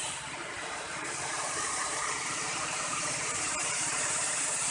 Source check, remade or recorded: remade